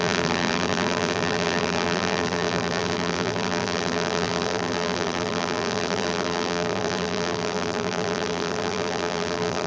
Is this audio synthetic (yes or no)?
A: yes